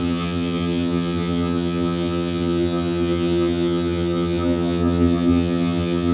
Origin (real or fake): fake